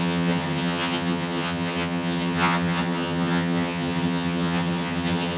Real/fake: fake